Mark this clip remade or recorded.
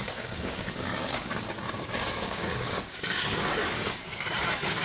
remade